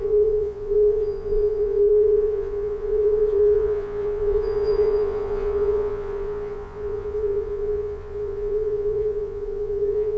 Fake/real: fake